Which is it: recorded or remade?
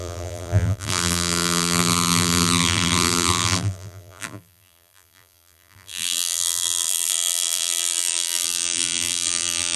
remade